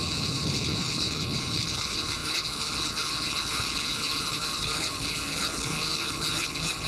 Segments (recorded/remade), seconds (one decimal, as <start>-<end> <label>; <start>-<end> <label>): 0.0-6.9 remade